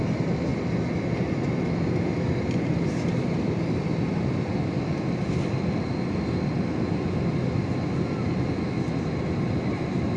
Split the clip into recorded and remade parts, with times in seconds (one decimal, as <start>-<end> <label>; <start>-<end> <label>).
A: 0.0-10.2 recorded